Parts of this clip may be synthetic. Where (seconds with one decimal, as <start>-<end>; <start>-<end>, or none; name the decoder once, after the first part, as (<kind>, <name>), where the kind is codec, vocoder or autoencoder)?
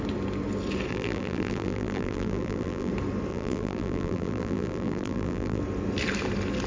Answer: 0.9-2.9 (vocoder, BigVGAN v2); 3.3-5.6